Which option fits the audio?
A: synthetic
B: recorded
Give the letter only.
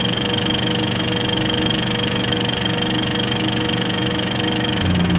A